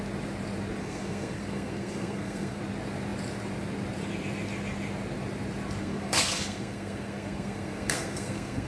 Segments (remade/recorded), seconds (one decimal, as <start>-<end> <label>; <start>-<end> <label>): 0.0-0.8 recorded; 0.8-2.6 remade; 2.6-5.8 recorded; 5.8-8.7 remade